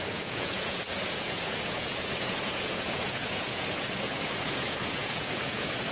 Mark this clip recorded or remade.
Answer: remade